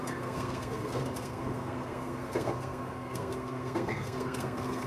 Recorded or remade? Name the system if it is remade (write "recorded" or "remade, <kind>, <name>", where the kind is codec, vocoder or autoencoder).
remade, codec, SNAC